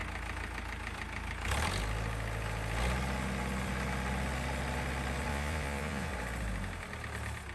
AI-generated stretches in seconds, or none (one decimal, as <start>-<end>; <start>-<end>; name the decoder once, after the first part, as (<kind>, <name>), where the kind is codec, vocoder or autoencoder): 5.3-6.1 (vocoder, Vocos)